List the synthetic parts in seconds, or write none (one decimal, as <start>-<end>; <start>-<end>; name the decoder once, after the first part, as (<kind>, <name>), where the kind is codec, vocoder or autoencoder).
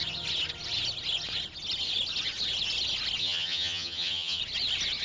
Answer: 3.2-4.4 (vocoder, HiFi-GAN)